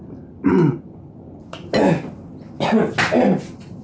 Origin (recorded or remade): recorded